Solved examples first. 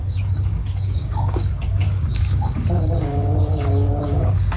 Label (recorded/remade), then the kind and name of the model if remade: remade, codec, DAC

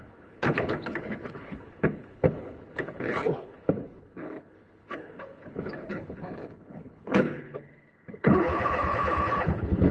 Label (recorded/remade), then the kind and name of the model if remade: remade, codec, HILCodec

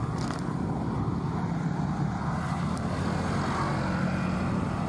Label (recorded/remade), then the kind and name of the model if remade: recorded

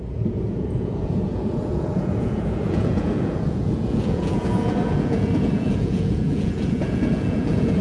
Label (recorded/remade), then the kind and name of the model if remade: remade, vocoder, Vocos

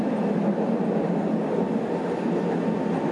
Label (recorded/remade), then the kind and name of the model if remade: recorded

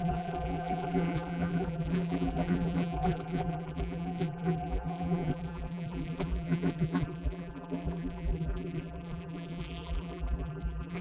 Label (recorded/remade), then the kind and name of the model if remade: remade, vocoder, BigVGAN v2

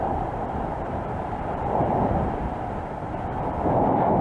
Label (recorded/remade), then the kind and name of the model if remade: remade, vocoder, BigVGAN v2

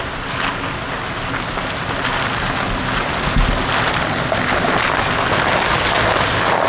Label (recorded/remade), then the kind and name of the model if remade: recorded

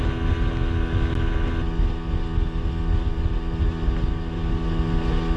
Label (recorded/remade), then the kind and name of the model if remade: recorded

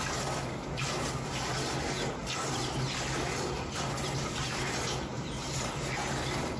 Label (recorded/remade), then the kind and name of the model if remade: recorded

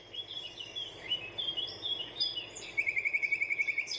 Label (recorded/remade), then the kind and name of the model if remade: remade, vocoder, BigVGAN v2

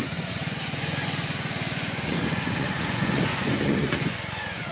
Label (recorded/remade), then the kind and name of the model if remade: remade, vocoder, Vocos